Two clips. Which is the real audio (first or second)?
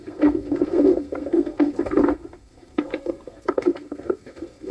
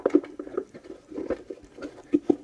second